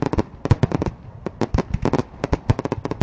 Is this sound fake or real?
real